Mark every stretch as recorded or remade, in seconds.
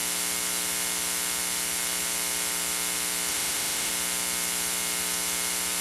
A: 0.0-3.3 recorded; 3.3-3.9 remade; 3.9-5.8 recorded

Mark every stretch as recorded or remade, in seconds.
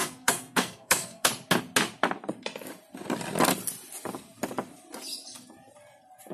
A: 0.0-1.3 remade; 1.3-6.3 recorded